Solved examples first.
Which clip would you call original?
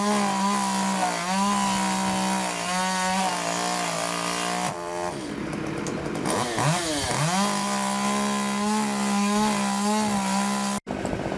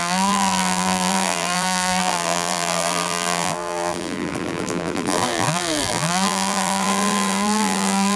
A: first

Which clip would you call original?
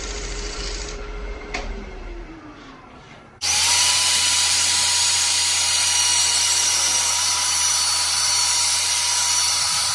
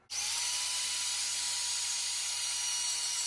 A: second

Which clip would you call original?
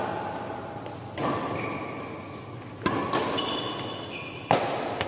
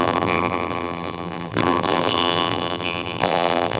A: first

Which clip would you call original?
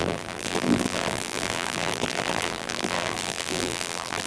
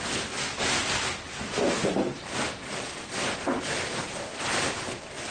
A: second